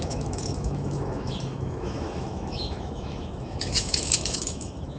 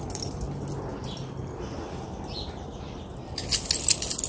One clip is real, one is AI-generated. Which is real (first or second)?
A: second